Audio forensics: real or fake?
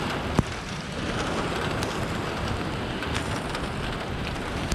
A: real